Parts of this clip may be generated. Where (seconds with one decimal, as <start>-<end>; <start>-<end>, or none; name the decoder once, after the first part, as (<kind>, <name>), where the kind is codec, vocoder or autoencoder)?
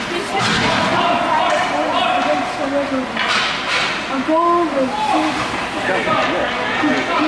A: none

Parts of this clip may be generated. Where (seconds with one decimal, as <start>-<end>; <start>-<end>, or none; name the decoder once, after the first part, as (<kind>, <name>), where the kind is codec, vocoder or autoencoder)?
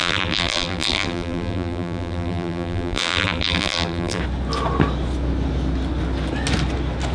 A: 0.0-4.2 (vocoder, BigVGAN v2)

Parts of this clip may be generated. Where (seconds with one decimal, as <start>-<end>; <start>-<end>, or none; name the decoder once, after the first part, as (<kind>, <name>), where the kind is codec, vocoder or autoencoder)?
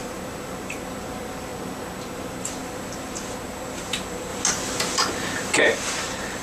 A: 0.0-1.5 (vocoder, BigVGAN v2); 2.0-4.3; 5.6-6.4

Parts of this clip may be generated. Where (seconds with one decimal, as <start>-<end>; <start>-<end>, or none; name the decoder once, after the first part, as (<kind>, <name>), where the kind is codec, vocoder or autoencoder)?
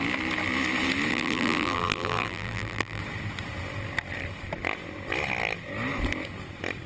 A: 1.1-3.0 (vocoder, BigVGAN v2)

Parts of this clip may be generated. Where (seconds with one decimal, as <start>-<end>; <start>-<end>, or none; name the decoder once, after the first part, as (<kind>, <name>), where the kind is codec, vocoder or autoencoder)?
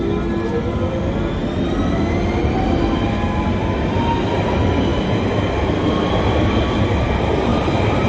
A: 7.5-8.1 (vocoder, BigVGAN v2)